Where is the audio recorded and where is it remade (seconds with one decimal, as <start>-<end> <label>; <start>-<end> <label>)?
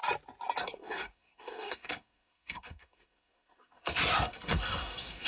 0.0-0.6 recorded; 0.6-5.3 remade